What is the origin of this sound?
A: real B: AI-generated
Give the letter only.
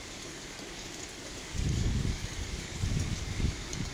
B